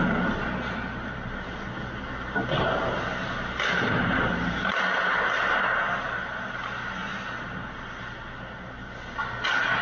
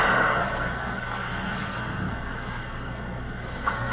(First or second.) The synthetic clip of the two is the second